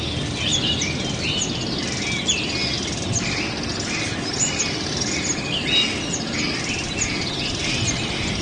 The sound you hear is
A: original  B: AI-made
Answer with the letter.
A